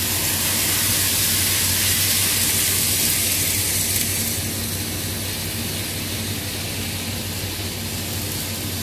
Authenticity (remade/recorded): recorded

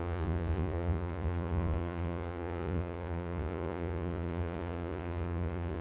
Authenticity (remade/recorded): remade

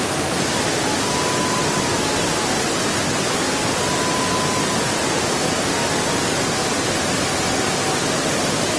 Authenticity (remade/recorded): recorded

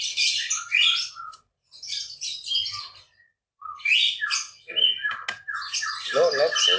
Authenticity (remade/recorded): recorded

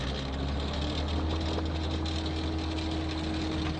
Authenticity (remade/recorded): recorded